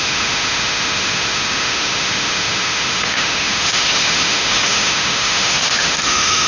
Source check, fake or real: fake